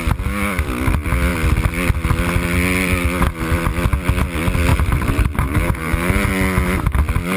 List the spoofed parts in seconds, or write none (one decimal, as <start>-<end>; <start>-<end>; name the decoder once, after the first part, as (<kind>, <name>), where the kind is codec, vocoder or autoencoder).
4.7-6.3 (vocoder, BigVGAN v2)